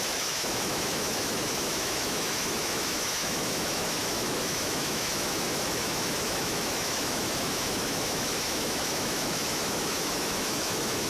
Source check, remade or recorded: remade